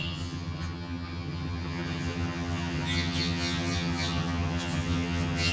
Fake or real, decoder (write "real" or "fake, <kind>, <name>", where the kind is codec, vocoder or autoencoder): fake, vocoder, HiFi-GAN